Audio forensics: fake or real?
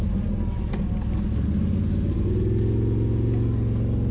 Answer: real